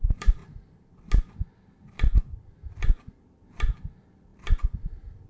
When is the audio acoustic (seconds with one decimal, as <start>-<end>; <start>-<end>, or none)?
0.4-3.1; 4.3-5.3